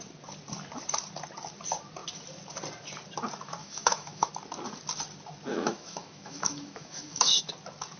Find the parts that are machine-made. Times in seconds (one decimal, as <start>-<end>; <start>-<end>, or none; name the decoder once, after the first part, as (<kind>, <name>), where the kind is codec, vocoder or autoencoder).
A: 3.6-4.3 (autoencoder, DAC-VAE); 5.5-7.5